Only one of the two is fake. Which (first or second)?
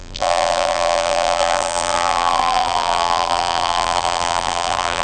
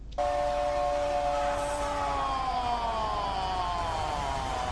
first